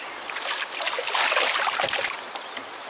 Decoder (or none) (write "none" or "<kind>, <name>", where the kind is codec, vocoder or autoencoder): none